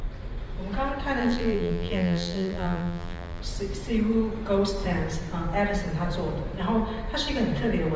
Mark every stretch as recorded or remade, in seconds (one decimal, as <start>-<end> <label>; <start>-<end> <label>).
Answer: 0.0-1.2 recorded; 1.2-3.4 remade; 3.4-8.0 recorded